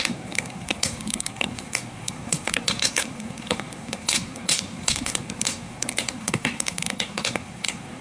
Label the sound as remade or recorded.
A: remade